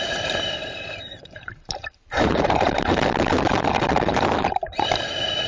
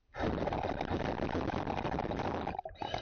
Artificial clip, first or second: first